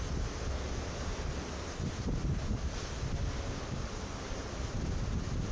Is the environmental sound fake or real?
real